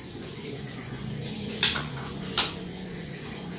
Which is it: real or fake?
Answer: fake